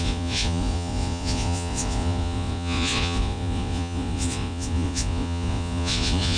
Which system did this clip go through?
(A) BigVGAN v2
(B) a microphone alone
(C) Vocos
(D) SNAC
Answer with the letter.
C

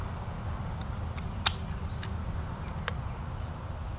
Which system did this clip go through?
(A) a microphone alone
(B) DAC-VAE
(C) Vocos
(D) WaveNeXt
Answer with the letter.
A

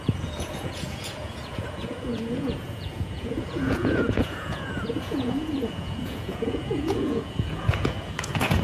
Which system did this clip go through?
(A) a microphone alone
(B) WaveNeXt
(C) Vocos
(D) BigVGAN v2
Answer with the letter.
C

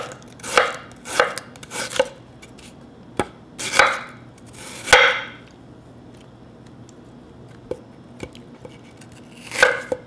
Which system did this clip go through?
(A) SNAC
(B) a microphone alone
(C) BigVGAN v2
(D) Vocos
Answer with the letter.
B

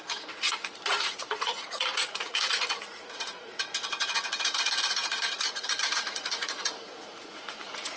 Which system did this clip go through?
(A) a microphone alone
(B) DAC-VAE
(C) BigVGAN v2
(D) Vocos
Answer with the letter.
D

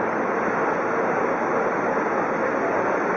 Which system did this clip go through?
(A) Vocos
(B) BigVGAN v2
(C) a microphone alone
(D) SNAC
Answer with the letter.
C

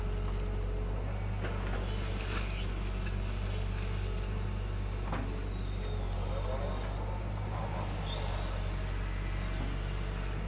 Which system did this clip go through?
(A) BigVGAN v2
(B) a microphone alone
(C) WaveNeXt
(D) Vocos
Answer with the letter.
B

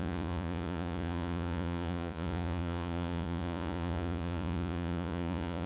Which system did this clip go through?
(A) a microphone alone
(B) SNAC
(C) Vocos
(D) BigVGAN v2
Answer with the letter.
C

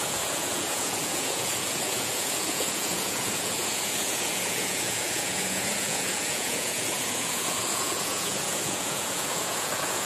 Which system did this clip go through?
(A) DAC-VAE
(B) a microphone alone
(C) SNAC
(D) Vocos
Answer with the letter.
D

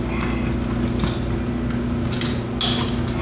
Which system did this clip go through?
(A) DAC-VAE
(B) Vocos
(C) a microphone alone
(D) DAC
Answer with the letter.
C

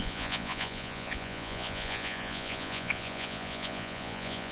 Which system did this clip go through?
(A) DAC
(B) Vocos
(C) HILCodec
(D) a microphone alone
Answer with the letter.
B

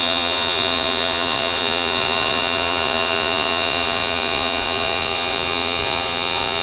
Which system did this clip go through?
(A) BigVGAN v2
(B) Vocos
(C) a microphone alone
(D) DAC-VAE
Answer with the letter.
B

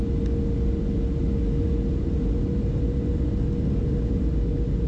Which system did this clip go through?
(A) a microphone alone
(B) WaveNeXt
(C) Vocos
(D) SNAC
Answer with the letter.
A